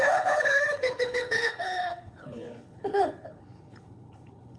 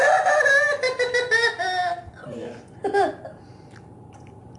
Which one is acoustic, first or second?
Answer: second